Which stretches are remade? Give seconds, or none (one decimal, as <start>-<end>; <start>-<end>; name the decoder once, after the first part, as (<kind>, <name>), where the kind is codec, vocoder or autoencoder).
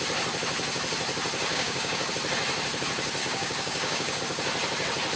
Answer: 1.5-2.1 (codec, DAC); 3.2-4.2